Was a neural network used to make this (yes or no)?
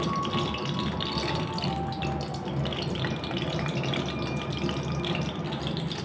no